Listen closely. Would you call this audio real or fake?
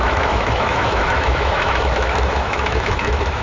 fake